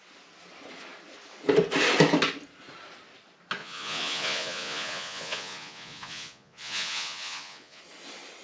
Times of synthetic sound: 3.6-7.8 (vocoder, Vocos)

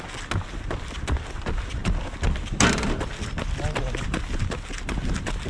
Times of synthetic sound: none

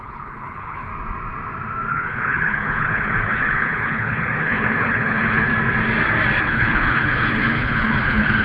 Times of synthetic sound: 0.0-0.9 (codec, HILCodec); 1.9-5.5; 6.4-8.4

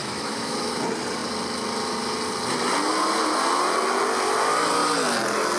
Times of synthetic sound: 0.0-0.7 (autoencoder, DAC-VAE)

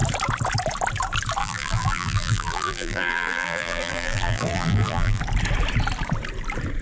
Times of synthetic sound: 1.4-5.2 (vocoder, BigVGAN v2)

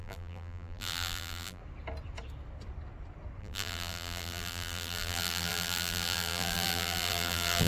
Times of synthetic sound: 0.0-1.6 (vocoder, BigVGAN v2); 3.4-7.7

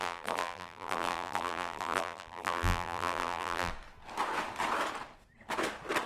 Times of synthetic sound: 0.0-3.7 (vocoder, BigVGAN v2)